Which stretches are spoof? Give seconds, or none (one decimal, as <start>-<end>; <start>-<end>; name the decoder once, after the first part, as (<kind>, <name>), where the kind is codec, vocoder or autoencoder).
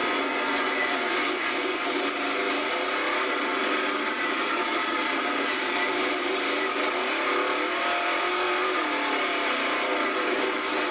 0.0-1.9 (vocoder, Vocos)